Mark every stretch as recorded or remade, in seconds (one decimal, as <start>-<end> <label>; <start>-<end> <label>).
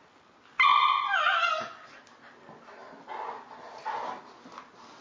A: 0.0-5.0 recorded